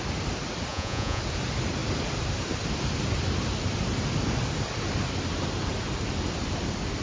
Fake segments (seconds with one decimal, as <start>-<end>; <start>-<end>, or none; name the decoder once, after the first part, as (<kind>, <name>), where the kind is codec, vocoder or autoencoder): 0.7-1.2 (vocoder, Vocos)